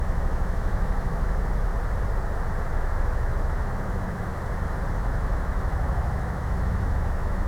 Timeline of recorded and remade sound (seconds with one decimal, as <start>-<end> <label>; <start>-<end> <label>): 0.0-1.7 remade; 1.7-2.7 recorded; 2.7-4.3 remade; 4.3-4.9 recorded; 4.9-7.5 remade